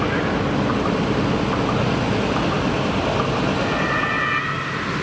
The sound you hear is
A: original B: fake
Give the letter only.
A